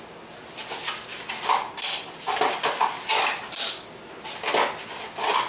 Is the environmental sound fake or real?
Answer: real